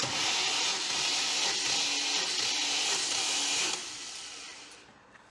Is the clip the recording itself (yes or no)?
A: yes